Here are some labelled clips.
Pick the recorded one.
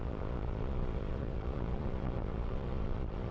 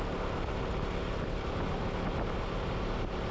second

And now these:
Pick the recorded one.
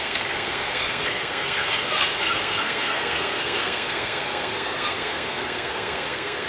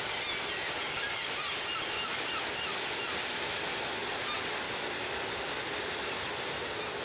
second